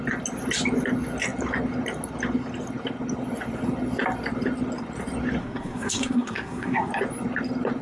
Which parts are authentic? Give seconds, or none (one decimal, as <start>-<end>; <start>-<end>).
0.0-5.4; 6.9-7.8